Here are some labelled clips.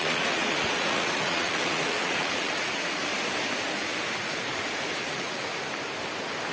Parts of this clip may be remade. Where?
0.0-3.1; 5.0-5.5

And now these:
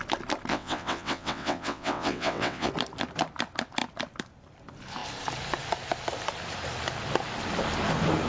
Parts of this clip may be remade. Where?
0.5-2.7